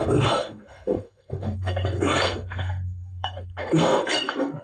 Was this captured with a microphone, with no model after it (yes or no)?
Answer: no